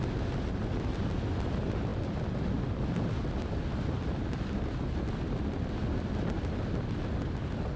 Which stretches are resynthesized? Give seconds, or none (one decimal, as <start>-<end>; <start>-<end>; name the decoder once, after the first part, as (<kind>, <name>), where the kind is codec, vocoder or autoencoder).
none